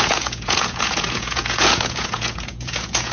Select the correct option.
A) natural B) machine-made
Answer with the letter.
B